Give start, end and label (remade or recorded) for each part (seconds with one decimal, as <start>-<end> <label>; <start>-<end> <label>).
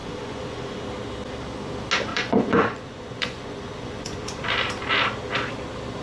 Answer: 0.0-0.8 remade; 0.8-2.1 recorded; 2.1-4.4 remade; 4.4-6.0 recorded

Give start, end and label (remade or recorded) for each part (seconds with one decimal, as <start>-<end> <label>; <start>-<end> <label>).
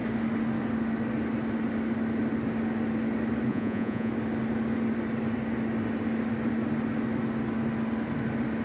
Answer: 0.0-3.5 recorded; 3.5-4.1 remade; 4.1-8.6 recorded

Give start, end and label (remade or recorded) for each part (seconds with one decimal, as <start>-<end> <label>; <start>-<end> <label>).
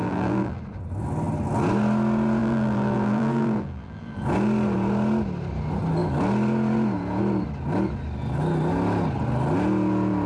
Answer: 0.0-0.6 remade; 0.6-2.4 recorded; 2.4-4.2 remade; 4.2-10.3 recorded